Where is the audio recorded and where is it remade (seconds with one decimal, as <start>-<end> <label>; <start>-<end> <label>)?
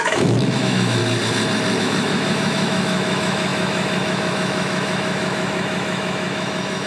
0.0-1.0 remade; 1.0-1.8 recorded; 1.8-6.9 remade